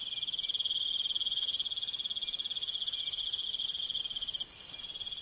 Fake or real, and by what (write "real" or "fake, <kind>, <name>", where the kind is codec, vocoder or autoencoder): real